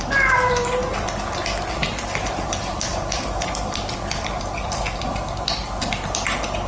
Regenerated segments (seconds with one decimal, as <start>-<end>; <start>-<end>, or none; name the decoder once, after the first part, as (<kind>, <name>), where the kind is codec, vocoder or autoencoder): 1.8-5.0 (vocoder, BigVGAN v2)